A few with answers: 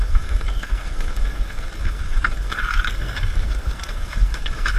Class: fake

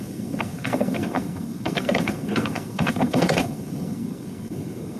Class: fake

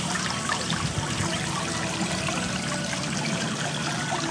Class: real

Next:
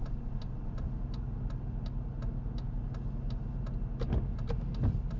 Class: real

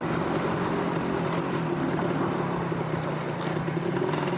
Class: real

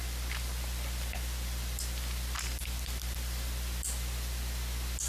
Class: real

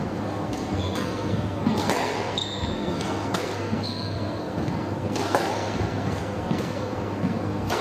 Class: fake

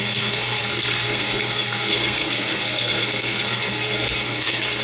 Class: fake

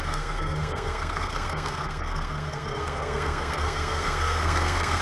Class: fake